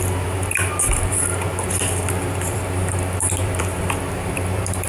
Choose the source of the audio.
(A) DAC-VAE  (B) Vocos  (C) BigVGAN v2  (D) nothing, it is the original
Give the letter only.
C